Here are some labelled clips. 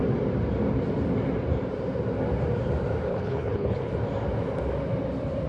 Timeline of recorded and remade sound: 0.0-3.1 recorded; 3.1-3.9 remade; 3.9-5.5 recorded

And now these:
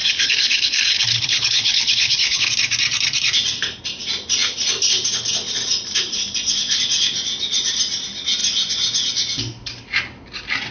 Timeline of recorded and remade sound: 0.0-2.5 remade; 2.5-10.7 recorded